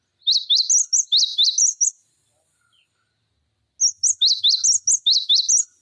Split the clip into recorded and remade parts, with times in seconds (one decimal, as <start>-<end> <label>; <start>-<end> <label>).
0.0-5.8 recorded